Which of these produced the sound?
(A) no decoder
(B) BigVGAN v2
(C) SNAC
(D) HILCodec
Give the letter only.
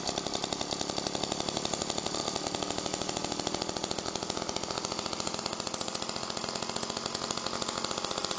A